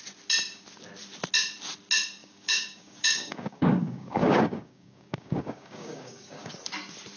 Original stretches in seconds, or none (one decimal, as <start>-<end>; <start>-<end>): 0.0-2.2; 6.5-7.2